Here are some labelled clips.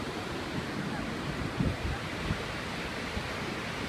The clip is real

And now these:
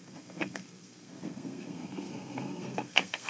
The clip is fake